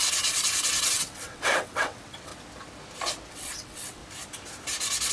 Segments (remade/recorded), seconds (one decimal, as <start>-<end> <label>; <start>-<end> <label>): 0.0-2.3 remade; 2.3-3.3 recorded; 3.3-4.0 remade; 4.0-5.1 recorded